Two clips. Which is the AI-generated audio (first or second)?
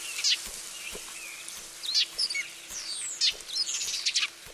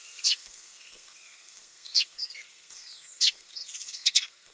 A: second